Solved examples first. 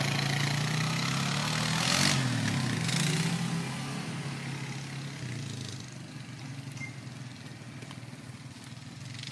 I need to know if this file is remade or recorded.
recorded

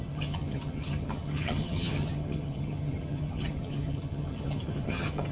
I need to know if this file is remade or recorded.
remade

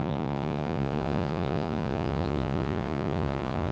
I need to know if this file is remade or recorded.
remade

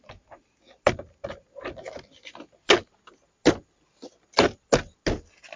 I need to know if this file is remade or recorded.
recorded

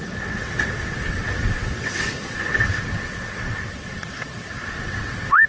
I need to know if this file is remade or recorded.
remade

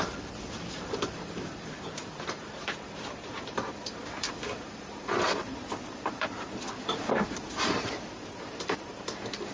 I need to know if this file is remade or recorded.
remade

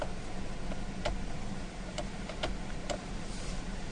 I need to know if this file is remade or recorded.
recorded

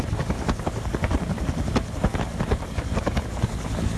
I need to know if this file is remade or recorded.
remade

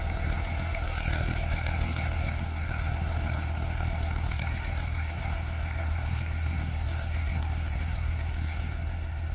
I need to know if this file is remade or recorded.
remade